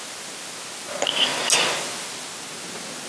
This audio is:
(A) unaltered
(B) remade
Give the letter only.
A